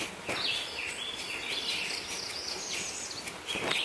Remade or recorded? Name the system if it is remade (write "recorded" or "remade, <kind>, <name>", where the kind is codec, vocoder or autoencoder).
recorded